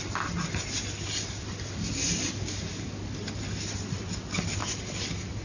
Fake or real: real